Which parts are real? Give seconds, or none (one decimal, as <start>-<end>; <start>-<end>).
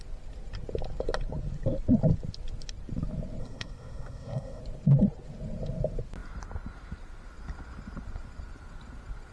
0.0-3.4; 4.6-9.3